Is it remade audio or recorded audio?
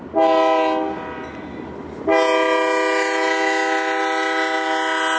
recorded